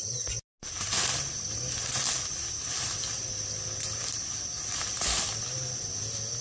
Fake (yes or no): no